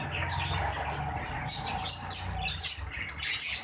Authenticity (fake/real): real